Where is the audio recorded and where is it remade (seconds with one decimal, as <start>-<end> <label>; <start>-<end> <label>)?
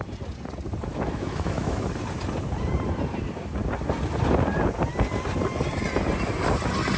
0.0-0.9 recorded; 0.9-1.9 remade; 1.9-7.0 recorded